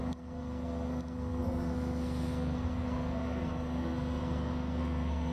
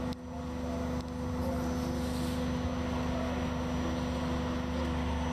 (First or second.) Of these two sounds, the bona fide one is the second